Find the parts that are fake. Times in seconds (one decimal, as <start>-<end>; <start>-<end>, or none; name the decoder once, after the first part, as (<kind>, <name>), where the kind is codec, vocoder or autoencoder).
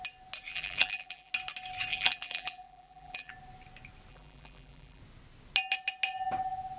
0.5-1.3 (vocoder, BigVGAN v2); 1.9-3.3; 4.1-5.0